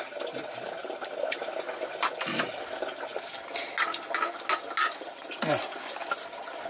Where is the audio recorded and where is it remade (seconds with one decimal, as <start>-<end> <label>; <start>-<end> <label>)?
0.0-6.7 recorded

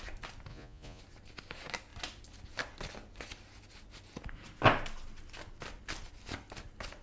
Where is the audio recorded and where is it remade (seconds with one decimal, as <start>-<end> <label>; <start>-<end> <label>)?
0.0-0.5 recorded; 0.5-1.0 remade; 1.0-7.0 recorded

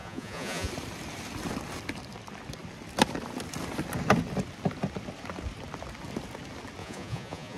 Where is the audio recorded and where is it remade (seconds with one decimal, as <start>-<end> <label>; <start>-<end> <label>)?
0.0-0.7 remade; 0.7-6.8 recorded; 6.8-7.6 remade

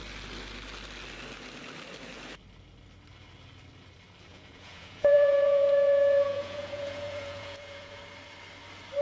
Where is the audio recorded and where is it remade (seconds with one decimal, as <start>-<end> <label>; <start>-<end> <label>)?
0.0-4.3 recorded; 4.3-8.0 remade; 8.0-9.0 recorded

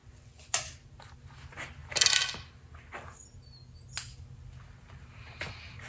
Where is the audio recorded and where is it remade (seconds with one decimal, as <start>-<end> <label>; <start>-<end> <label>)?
0.0-0.7 remade; 0.7-5.9 recorded

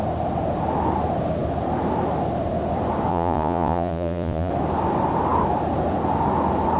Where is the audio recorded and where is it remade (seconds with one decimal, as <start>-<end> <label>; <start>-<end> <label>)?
0.0-3.1 recorded; 3.1-4.5 remade; 4.5-6.8 recorded